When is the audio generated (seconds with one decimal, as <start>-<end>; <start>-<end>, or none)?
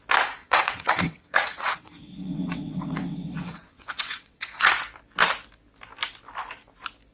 0.4-4.7